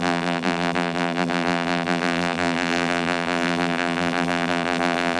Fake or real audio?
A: fake